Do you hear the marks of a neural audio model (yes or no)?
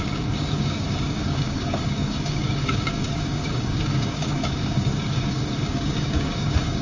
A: yes